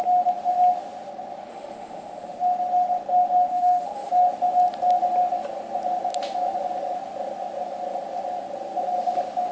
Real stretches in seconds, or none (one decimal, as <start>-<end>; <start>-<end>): 0.0-1.5; 2.4-3.5; 4.1-9.5